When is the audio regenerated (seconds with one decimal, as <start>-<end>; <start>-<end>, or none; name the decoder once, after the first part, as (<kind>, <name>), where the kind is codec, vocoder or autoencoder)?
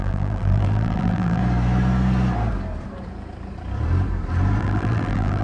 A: 0.0-1.4 (vocoder, BigVGAN v2); 4.6-5.4